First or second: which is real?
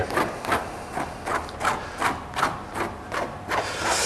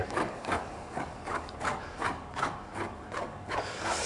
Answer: first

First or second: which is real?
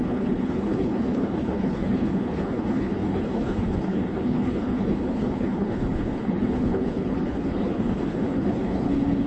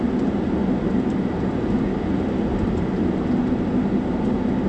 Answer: second